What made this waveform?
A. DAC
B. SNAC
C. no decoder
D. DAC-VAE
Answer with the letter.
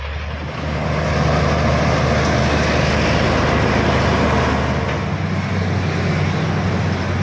C